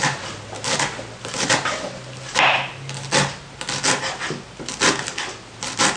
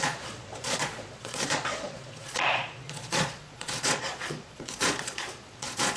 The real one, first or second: first